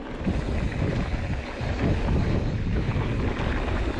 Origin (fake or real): real